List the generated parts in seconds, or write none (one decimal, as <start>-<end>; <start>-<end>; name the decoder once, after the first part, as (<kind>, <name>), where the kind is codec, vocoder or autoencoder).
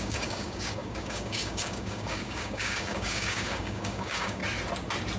0.0-4.4 (codec, DAC)